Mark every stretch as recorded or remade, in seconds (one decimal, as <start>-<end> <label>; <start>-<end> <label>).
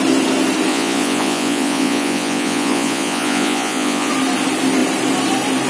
0.0-0.7 recorded; 0.7-4.1 remade; 4.1-5.7 recorded